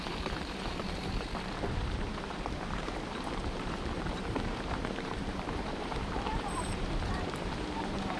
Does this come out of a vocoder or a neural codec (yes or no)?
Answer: yes